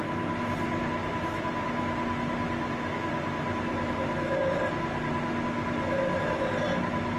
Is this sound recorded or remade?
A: recorded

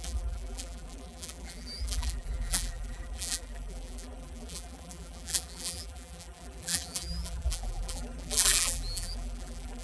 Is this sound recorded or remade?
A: remade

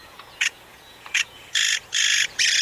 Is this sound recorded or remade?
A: remade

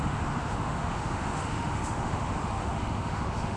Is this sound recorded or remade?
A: remade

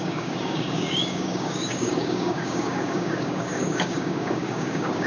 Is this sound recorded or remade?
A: remade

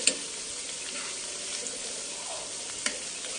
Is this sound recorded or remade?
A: recorded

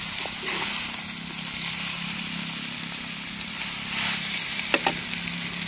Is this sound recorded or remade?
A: recorded